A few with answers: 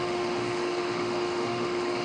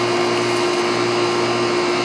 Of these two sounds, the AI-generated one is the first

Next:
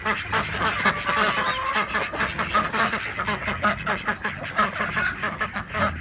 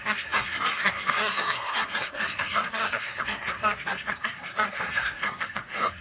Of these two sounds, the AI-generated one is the second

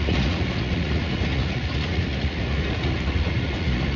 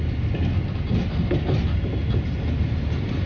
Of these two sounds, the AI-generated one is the first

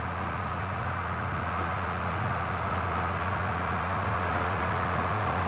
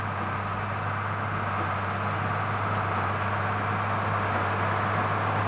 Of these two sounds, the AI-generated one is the first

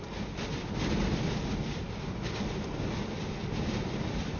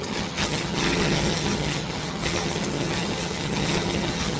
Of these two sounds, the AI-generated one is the second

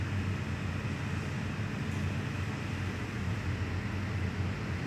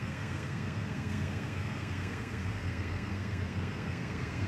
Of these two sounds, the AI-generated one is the second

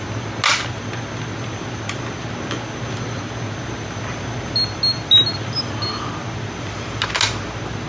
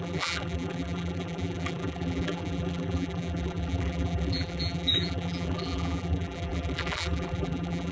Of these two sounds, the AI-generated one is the second